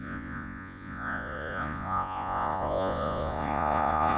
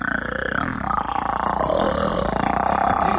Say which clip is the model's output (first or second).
first